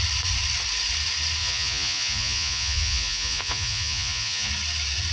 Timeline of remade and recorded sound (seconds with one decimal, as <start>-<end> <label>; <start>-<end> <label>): 0.0-1.4 recorded; 1.4-4.5 remade; 4.5-5.1 recorded